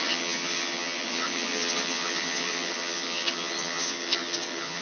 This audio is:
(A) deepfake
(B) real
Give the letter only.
A